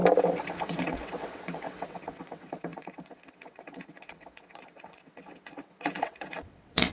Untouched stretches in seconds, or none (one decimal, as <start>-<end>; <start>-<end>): 0.0-0.6